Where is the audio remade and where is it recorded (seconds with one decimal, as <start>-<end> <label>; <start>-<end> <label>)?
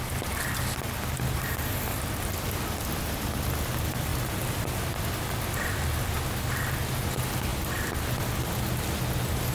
0.0-9.5 recorded